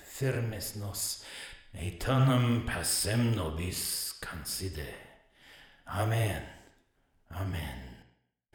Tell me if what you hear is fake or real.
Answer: fake